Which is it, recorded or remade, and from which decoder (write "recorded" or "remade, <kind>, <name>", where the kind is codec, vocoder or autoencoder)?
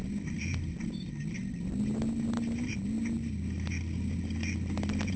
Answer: recorded